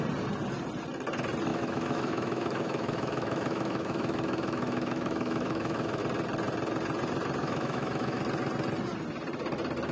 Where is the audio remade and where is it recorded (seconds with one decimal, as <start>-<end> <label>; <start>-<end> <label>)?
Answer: 0.0-1.5 recorded; 1.5-6.0 remade; 6.0-7.4 recorded; 7.4-8.2 remade; 8.2-9.9 recorded